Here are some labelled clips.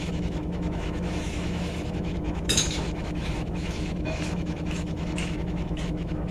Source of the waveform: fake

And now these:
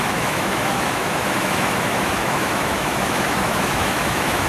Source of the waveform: fake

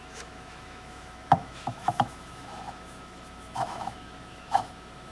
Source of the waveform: fake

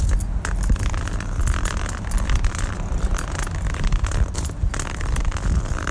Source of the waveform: real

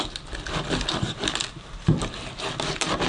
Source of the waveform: real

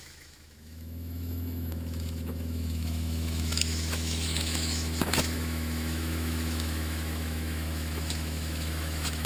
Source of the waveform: fake